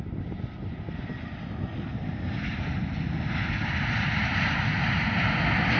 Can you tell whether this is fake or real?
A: real